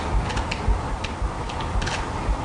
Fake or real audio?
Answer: real